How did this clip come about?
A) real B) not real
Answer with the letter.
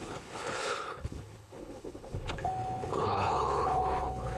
B